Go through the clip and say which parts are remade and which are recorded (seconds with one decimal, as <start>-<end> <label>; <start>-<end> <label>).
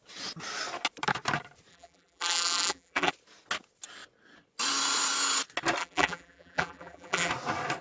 0.0-1.7 recorded; 1.7-3.1 remade; 3.1-5.8 recorded; 5.8-7.3 remade; 7.3-7.8 recorded